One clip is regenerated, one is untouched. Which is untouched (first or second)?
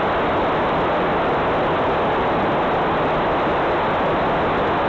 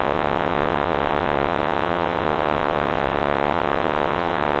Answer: first